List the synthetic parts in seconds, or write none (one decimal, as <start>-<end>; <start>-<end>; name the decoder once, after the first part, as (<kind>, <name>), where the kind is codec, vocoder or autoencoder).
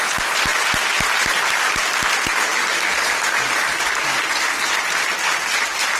none